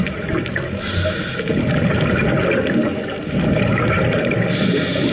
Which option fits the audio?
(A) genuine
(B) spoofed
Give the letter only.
A